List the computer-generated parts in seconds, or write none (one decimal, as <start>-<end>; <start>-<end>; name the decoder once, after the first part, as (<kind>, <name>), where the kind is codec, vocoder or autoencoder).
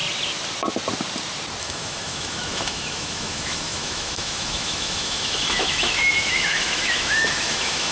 1.6-7.9 (autoencoder, DAC-VAE)